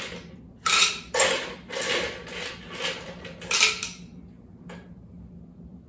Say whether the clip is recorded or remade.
recorded